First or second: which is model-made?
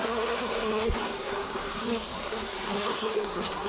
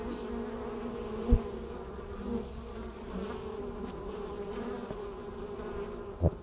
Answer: first